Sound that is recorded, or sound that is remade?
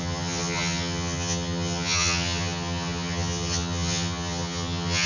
remade